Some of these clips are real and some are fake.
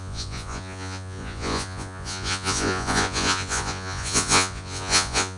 fake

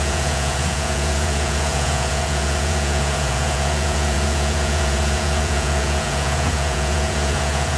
fake